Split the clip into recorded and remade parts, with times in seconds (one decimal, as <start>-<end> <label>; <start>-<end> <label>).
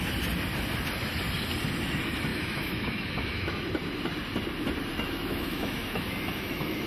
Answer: 0.0-2.3 recorded; 2.3-3.6 remade; 3.6-4.9 recorded; 4.9-6.9 remade